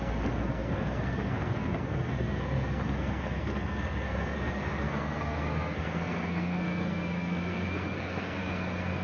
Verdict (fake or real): fake